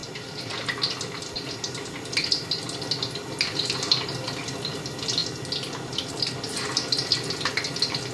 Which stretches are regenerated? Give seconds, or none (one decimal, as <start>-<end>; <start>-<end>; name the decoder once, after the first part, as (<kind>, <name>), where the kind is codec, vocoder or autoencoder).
0.0-0.5 (vocoder, BigVGAN v2)